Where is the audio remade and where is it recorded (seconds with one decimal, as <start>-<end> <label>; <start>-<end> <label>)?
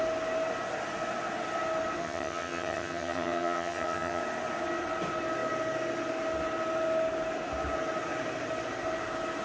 0.0-2.0 recorded; 2.0-4.2 remade; 4.2-9.4 recorded